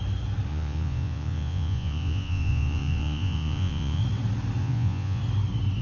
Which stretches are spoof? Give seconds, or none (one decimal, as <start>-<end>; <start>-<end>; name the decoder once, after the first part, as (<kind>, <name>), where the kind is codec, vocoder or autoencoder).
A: 0.5-4.0 (vocoder, Vocos); 4.6-5.2